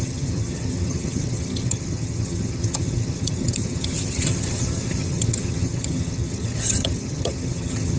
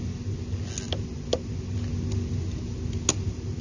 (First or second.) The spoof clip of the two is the first